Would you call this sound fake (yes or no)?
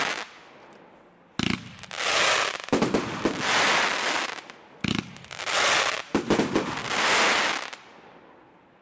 no